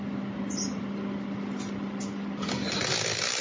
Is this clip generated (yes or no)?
no